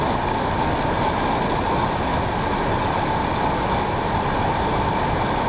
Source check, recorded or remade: recorded